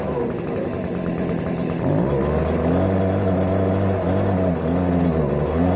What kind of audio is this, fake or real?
real